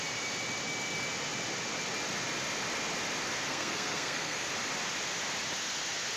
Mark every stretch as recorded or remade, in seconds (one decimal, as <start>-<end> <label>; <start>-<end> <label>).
0.0-3.5 recorded; 3.5-4.5 remade; 4.5-6.2 recorded